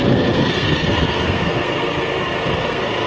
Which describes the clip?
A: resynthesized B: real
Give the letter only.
A